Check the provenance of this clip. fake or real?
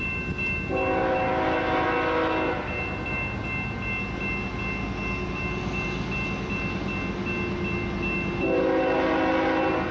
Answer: real